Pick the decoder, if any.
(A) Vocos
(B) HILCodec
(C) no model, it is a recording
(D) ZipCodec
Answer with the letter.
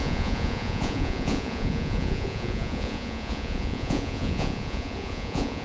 A